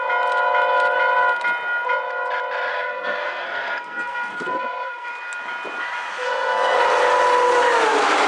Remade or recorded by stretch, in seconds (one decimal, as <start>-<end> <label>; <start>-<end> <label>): 0.0-2.7 recorded; 2.7-5.1 remade; 5.1-6.2 recorded; 6.2-6.8 remade; 6.8-8.3 recorded